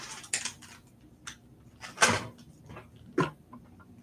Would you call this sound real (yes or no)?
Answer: yes